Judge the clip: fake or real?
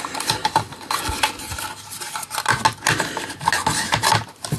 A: real